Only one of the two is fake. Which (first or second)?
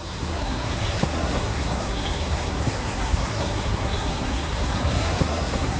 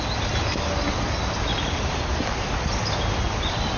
first